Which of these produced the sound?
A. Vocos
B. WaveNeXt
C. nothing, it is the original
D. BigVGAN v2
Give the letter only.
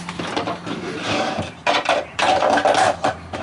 D